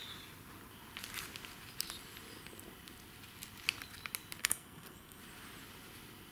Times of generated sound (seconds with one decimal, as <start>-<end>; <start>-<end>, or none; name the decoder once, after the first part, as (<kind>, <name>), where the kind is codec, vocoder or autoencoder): 4.4-5.2 (codec, SNAC)